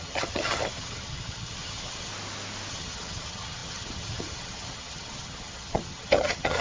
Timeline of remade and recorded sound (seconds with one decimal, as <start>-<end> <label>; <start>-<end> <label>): 0.0-2.1 remade; 2.1-2.7 recorded; 2.7-6.6 remade